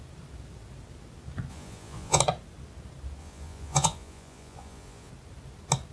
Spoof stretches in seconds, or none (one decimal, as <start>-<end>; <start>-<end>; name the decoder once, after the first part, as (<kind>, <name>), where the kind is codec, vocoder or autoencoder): 1.5-2.2 (vocoder, Vocos); 3.2-5.1